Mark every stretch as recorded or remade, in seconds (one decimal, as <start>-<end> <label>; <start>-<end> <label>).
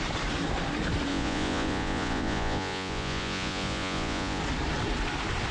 0.0-1.1 recorded; 1.1-4.4 remade; 4.4-5.5 recorded